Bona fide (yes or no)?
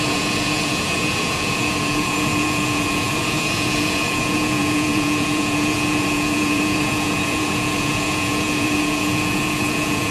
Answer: no